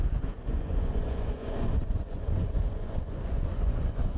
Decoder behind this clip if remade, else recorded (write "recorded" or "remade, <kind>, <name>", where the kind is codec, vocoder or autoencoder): remade, vocoder, Vocos